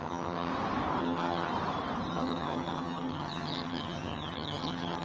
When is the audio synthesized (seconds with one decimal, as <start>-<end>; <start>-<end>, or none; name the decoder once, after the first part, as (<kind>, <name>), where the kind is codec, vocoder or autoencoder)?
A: 0.0-0.5 (vocoder, HiFi-GAN); 1.0-1.5; 2.1-5.0